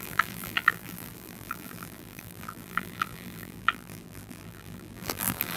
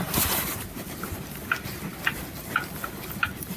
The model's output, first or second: first